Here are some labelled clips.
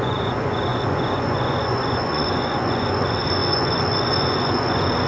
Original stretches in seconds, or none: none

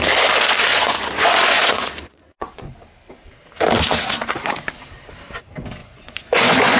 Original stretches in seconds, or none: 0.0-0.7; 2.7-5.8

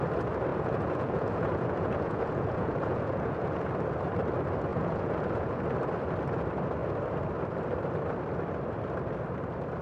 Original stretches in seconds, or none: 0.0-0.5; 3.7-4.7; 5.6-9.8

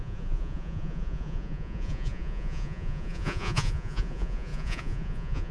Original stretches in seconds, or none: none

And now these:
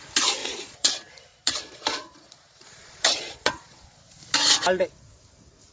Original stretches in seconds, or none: 0.0-0.4; 0.9-1.3; 4.0-5.7

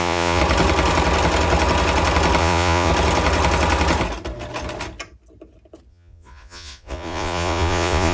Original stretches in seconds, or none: 0.4-2.4; 2.9-5.9

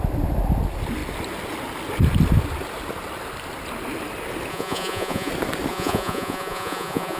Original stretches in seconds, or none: 0.0-4.5; 5.3-5.7

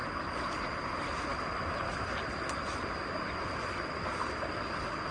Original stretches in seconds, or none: 0.0-5.1